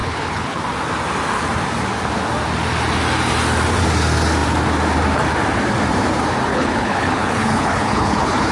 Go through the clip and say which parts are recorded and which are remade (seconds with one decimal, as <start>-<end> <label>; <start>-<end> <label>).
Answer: 0.0-0.6 remade; 0.6-6.5 recorded; 6.5-8.5 remade